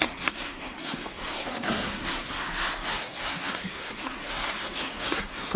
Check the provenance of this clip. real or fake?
fake